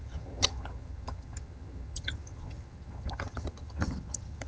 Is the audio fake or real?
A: fake